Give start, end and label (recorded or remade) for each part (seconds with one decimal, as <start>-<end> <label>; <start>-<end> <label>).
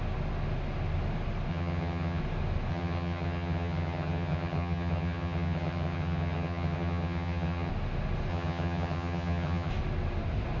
0.0-1.5 recorded; 1.5-2.2 remade; 2.2-2.7 recorded; 2.7-7.7 remade; 7.7-8.3 recorded; 8.3-9.7 remade; 9.7-10.6 recorded